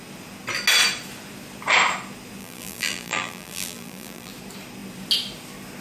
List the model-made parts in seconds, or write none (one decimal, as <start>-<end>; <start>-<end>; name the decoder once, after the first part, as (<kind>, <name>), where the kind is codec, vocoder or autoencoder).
2.4-4.3 (vocoder, BigVGAN v2)